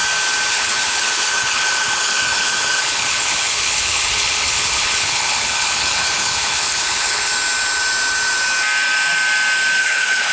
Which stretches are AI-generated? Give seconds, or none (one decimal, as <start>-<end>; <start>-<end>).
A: 0.5-7.3; 9.8-10.3